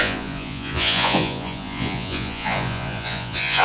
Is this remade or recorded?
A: remade